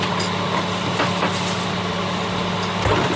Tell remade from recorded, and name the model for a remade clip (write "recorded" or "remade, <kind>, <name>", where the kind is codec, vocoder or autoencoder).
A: recorded